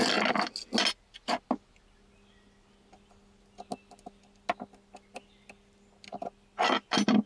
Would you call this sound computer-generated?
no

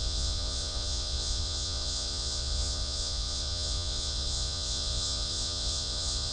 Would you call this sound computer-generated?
yes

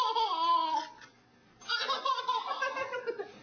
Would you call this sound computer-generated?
no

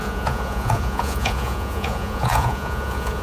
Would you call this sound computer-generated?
yes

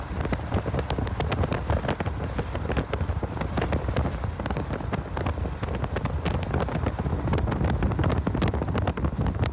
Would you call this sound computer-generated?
no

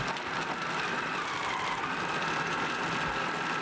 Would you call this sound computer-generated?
no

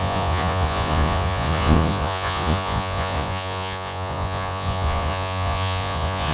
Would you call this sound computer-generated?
yes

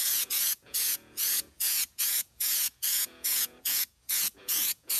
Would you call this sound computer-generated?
yes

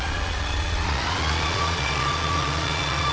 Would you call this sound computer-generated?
yes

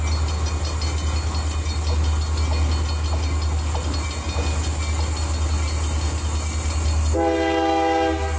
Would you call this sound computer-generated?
no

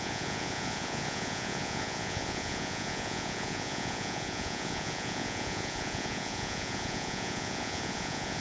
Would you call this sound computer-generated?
yes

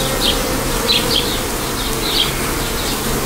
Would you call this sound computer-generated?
no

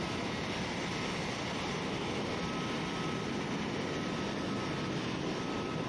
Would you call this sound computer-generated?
no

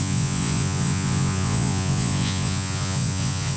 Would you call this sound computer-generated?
yes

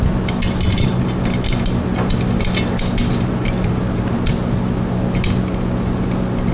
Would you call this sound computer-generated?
no